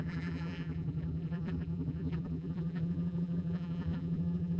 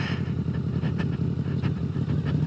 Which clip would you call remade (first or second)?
first